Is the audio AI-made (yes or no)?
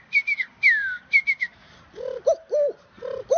no